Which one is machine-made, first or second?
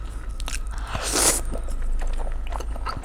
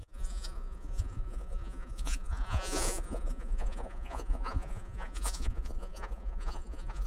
second